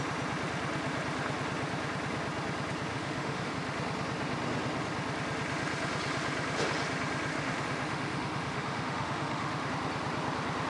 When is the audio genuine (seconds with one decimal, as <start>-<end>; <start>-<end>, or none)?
0.0-2.9; 3.5-7.3; 9.7-10.7